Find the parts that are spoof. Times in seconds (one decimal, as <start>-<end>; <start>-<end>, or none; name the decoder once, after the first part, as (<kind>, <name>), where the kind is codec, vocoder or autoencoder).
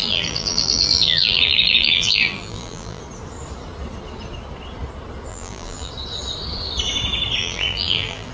0.0-3.0 (vocoder, BigVGAN v2); 5.3-5.9; 7.4-8.3